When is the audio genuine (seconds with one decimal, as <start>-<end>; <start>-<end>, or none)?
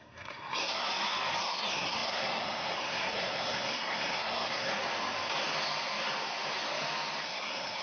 0.9-1.4; 4.7-7.2